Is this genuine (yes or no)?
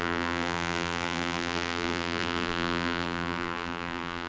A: no